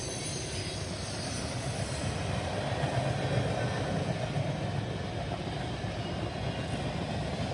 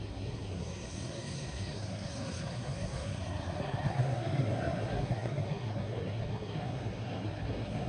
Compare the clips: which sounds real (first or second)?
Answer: first